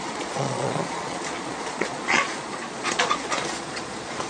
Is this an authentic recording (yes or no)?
no